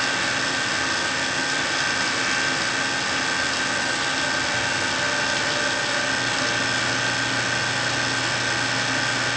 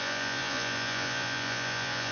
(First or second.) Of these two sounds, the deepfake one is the second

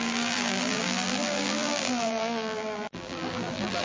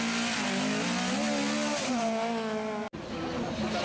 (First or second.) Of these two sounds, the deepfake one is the first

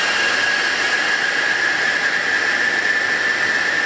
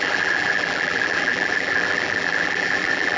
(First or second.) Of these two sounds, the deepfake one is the second